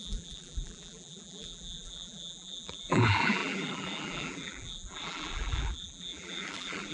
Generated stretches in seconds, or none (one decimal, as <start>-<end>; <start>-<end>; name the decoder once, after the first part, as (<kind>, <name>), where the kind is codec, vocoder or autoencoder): 0.0-6.9 (vocoder, BigVGAN v2)